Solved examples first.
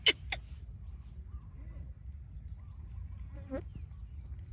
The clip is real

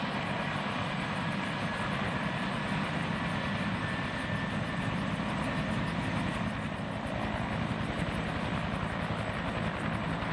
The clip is real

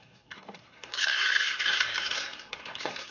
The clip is fake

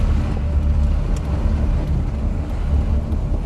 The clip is real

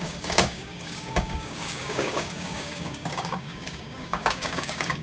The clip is fake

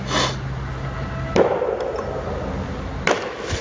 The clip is real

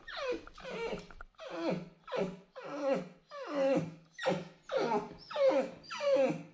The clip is real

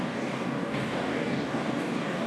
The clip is fake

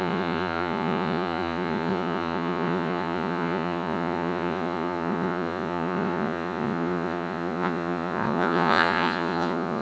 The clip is fake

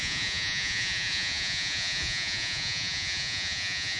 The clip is fake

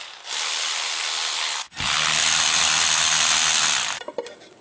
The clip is real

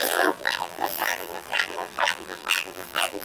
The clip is fake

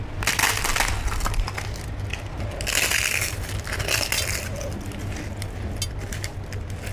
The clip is real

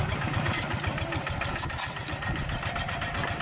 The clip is real